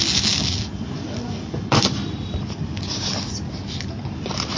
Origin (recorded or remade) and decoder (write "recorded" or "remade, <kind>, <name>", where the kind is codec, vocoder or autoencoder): recorded